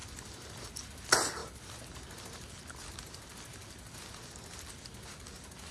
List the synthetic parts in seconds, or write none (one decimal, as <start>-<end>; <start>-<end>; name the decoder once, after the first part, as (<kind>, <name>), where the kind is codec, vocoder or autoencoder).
none